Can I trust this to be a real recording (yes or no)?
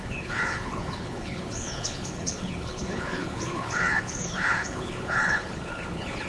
no